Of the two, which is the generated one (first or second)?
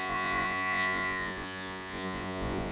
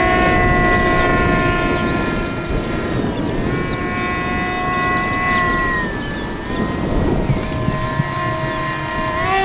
first